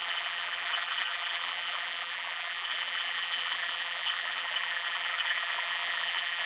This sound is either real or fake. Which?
fake